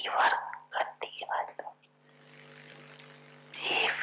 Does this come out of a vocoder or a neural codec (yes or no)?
no